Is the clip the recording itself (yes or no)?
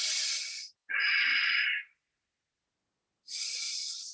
yes